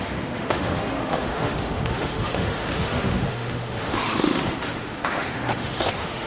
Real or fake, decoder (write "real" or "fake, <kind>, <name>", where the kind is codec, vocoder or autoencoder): fake, autoencoder, DAC-VAE